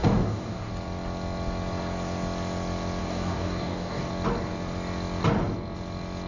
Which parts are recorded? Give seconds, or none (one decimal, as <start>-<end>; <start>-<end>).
0.7-3.0; 4.1-6.3